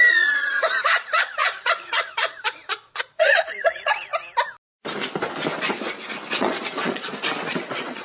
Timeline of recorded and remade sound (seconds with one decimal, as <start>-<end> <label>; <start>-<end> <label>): 0.0-4.1 remade; 4.1-6.4 recorded; 6.4-7.1 remade; 7.1-7.6 recorded; 7.6-8.0 remade